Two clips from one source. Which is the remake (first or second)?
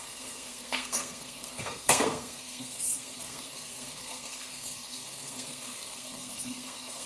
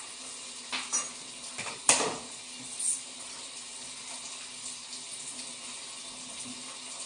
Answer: first